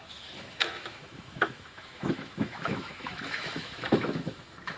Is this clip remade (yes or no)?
yes